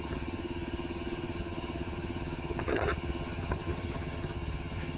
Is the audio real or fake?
fake